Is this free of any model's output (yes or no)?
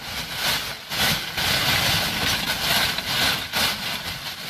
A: yes